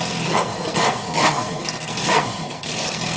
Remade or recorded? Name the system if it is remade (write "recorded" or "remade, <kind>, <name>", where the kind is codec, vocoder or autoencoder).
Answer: remade, codec, SNAC